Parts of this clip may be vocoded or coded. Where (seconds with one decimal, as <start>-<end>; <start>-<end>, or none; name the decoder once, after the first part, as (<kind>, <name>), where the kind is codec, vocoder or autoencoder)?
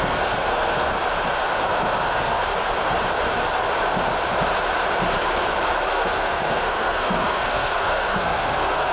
0.0-0.9 (codec, SNAC); 1.6-2.5; 5.9-8.9